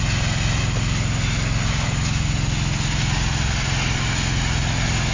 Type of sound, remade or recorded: recorded